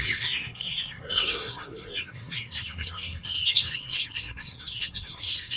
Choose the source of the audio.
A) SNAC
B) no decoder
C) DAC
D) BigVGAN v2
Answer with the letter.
A